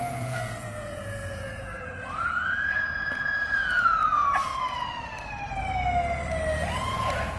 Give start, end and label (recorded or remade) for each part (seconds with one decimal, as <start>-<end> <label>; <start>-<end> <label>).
0.0-4.5 remade; 4.5-6.9 recorded; 6.9-7.4 remade